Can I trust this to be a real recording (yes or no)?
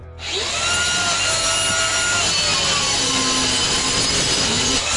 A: yes